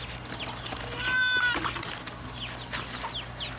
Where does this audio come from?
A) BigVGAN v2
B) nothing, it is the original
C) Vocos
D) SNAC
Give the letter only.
B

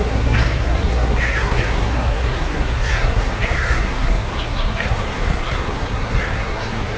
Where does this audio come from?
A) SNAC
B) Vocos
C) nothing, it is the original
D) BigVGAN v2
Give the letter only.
A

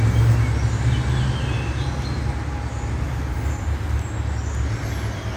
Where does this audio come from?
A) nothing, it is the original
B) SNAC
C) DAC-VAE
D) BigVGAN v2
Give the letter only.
A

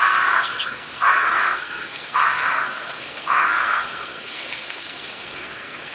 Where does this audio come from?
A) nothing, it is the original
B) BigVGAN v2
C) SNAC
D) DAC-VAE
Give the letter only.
C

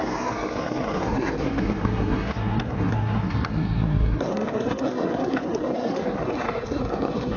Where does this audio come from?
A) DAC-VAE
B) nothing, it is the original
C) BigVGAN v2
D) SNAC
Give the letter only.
D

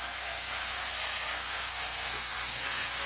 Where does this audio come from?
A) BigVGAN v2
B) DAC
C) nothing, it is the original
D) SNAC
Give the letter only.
D